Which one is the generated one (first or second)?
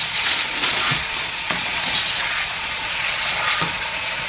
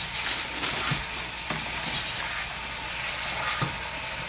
first